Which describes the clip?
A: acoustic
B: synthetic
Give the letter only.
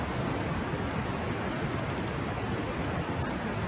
A